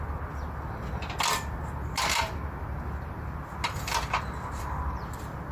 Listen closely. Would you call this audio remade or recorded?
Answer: recorded